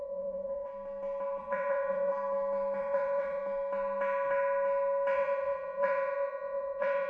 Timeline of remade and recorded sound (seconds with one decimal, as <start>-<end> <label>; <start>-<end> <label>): 0.0-0.7 remade; 0.7-1.4 recorded; 1.4-2.1 remade; 2.1-2.8 recorded; 2.8-3.4 remade; 3.4-5.1 recorded; 5.1-7.1 remade